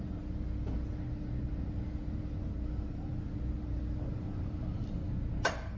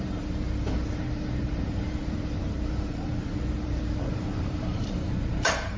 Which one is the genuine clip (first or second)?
first